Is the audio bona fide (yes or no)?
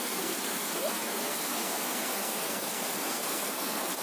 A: no